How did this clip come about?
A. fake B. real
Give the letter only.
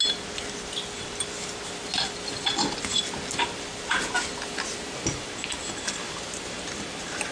B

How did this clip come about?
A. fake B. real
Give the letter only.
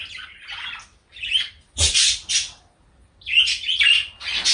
B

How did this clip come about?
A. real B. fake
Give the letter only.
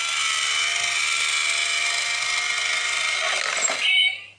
A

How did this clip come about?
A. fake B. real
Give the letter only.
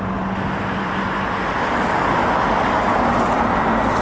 B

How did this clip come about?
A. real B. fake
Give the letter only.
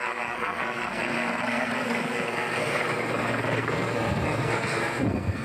B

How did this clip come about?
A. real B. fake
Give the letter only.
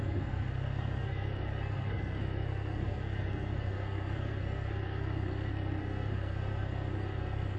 B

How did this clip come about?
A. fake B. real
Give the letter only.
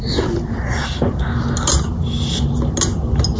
B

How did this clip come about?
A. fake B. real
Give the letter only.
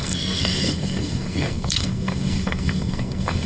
A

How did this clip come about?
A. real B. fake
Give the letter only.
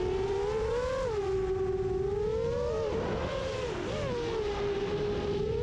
A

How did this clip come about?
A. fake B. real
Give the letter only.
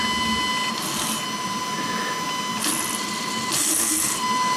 B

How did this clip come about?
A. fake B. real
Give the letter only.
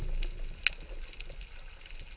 B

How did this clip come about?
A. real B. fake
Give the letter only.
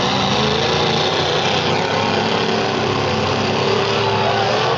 A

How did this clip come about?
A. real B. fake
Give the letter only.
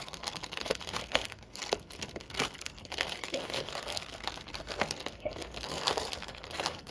B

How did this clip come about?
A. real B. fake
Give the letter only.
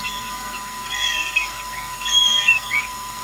B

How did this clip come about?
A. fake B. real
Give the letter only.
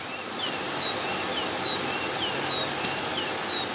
B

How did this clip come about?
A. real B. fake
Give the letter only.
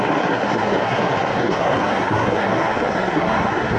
B